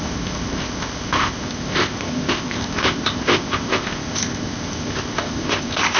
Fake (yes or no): yes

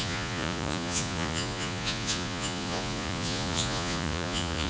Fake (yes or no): yes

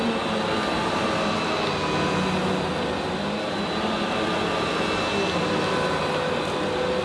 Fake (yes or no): no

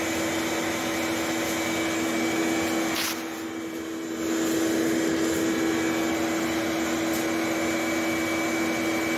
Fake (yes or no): no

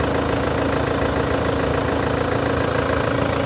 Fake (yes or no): no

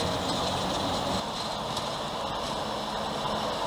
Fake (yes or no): no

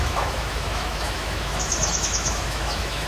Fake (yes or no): yes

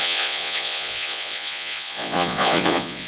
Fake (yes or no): yes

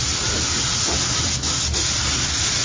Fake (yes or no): no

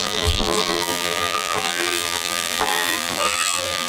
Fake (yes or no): yes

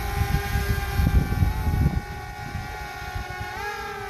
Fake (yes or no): no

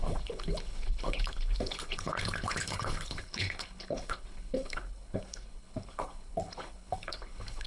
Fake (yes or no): yes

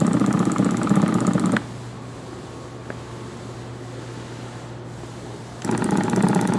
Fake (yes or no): no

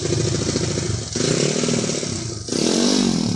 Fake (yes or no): no